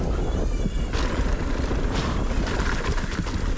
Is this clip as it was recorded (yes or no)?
yes